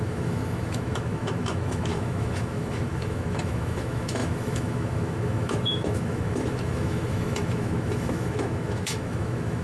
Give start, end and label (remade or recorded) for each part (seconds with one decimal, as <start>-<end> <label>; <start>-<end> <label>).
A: 0.0-9.6 remade